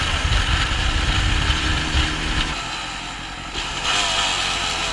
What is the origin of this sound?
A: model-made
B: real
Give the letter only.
B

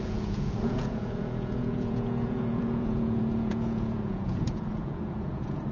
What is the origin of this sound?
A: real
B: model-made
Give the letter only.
B